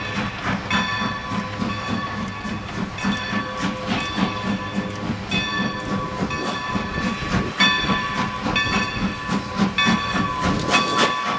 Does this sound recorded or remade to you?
recorded